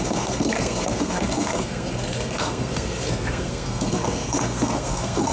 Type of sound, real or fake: fake